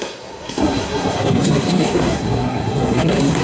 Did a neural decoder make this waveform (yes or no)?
yes